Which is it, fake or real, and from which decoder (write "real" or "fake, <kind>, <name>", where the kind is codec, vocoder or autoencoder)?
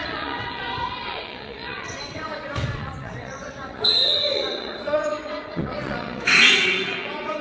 fake, vocoder, WaveNeXt